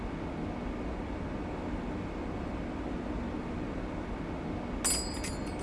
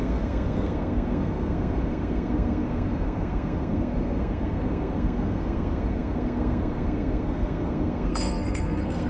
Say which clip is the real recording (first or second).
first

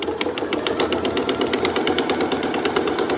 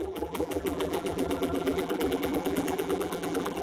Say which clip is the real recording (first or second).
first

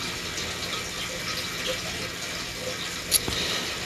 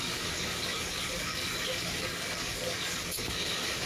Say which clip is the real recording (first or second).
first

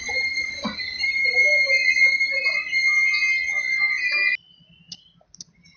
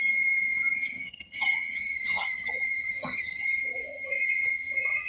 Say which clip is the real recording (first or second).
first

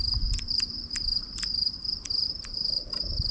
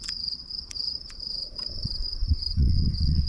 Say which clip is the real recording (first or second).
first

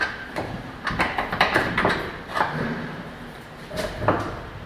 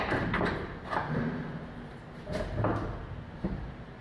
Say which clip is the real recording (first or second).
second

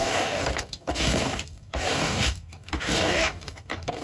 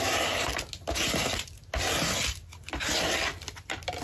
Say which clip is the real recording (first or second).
second